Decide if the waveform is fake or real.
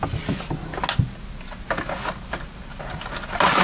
real